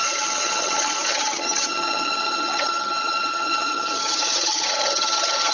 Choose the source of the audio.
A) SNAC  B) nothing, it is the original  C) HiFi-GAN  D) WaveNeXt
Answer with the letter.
C